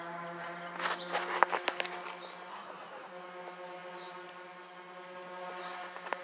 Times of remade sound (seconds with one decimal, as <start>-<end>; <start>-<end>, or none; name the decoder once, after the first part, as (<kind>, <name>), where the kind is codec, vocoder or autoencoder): 2.5-3.1 (codec, SNAC)